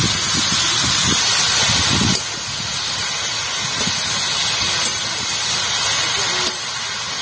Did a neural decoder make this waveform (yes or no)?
no